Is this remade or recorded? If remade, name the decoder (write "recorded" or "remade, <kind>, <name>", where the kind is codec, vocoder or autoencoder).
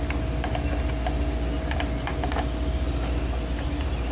recorded